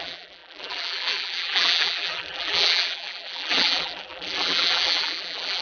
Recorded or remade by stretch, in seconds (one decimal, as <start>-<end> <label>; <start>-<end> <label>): 0.0-5.6 remade